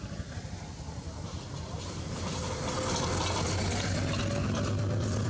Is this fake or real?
real